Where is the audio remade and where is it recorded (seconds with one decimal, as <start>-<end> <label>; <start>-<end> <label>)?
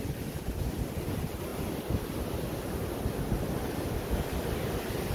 0.0-5.1 recorded